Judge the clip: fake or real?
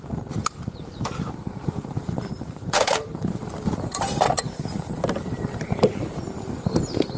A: fake